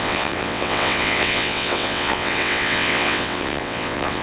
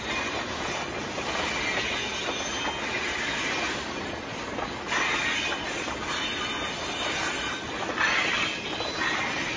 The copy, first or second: first